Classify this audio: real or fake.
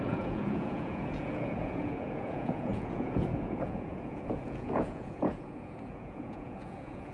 fake